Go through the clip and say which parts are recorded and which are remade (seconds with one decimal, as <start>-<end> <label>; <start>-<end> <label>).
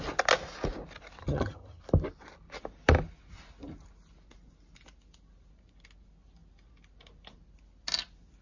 0.0-1.2 recorded; 1.2-1.8 remade; 1.8-8.4 recorded